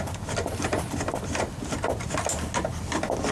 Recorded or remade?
recorded